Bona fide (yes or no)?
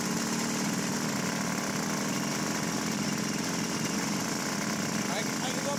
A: yes